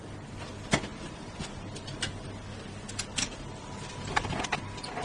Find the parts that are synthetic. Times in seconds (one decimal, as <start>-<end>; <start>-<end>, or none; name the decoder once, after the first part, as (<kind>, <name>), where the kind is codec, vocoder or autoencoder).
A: none